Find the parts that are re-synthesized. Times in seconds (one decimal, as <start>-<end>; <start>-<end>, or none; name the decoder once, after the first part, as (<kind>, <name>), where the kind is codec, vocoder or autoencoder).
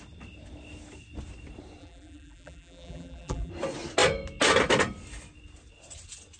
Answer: 1.8-3.5 (vocoder, BigVGAN v2)